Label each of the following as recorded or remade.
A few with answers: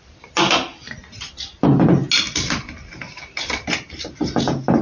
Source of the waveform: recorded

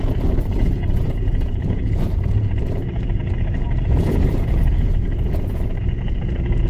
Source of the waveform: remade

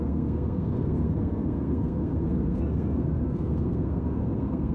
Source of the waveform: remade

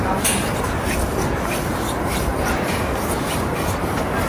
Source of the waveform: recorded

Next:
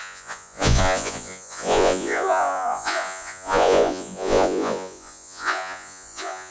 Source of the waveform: remade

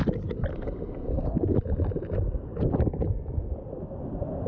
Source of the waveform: recorded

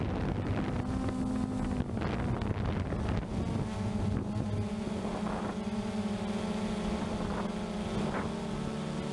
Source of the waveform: recorded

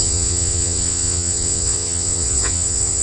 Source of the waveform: remade